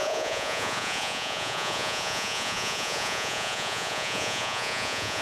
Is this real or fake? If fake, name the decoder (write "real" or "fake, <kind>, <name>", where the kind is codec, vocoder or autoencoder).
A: fake, vocoder, Vocos